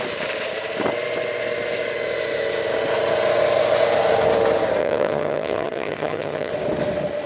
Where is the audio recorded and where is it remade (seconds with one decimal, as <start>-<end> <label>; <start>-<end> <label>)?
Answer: 0.0-4.8 recorded; 4.8-6.5 remade; 6.5-7.3 recorded

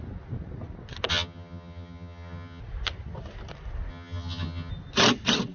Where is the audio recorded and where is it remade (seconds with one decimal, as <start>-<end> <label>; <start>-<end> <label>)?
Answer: 0.0-1.1 recorded; 1.1-2.6 remade; 2.6-3.9 recorded; 3.9-4.7 remade; 4.7-5.5 recorded

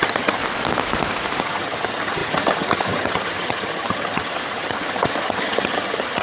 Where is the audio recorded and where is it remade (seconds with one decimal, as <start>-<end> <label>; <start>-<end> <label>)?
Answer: 0.0-0.4 remade; 0.4-1.4 recorded; 1.4-6.2 remade

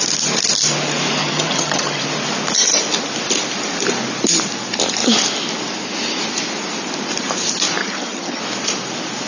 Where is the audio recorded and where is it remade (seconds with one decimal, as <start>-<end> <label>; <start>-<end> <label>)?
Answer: 0.0-1.2 recorded; 1.2-2.0 remade; 2.0-7.8 recorded; 7.8-8.4 remade; 8.4-9.3 recorded

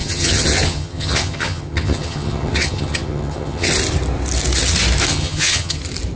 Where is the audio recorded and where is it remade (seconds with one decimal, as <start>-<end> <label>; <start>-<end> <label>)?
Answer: 0.0-3.7 remade; 3.7-5.1 recorded; 5.1-5.8 remade; 5.8-6.2 recorded

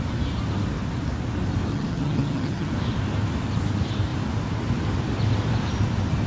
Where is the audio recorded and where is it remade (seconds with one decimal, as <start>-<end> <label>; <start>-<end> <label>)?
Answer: 0.0-1.7 recorded; 1.7-2.7 remade; 2.7-6.3 recorded

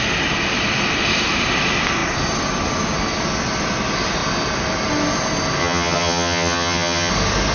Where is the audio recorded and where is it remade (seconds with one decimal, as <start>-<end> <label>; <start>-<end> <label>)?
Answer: 0.0-5.6 recorded; 5.6-7.1 remade; 7.1-7.5 recorded